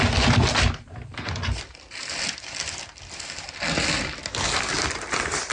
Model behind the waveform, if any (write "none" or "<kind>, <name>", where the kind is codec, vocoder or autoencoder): none